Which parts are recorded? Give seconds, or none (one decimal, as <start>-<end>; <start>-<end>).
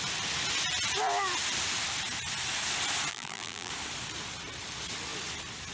0.0-3.1; 3.7-5.7